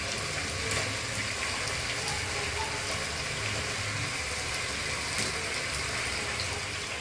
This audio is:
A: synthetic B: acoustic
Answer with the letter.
B